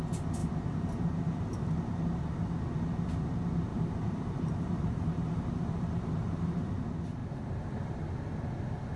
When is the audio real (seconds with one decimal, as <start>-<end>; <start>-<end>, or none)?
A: 0.0-3.7; 6.6-7.2; 7.9-9.0